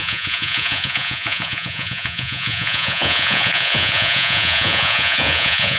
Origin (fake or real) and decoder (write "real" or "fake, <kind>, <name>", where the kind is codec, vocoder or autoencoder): fake, vocoder, Vocos